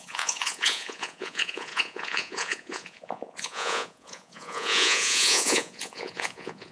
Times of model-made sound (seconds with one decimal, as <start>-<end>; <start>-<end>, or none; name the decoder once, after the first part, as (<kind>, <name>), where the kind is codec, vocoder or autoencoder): 0.0-6.7 (vocoder, Vocos)